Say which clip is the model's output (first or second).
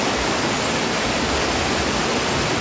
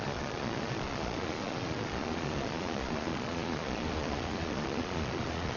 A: second